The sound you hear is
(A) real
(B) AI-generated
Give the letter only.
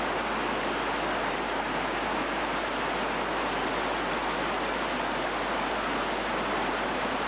A